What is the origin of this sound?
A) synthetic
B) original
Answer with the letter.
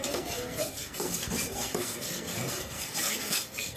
A